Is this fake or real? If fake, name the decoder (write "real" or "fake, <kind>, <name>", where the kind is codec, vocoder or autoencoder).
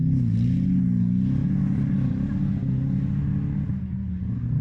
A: real